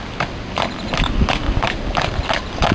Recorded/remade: recorded